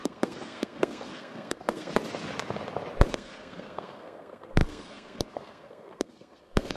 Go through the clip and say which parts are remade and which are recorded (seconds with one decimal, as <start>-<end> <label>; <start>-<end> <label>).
0.0-1.9 remade; 1.9-3.1 recorded; 3.1-6.8 remade